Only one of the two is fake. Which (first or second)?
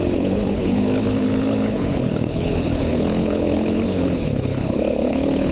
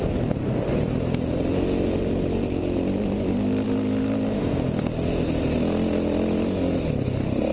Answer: first